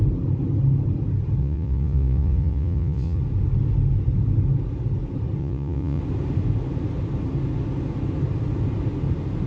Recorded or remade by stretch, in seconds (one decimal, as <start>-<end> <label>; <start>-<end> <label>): 0.0-1.4 recorded; 1.4-3.2 remade; 3.2-5.4 recorded; 5.4-6.0 remade; 6.0-9.5 recorded